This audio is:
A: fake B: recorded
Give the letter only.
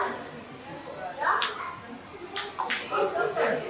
B